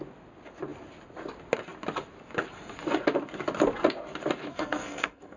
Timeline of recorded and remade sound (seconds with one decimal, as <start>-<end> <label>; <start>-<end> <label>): 0.0-4.5 recorded; 4.5-5.4 remade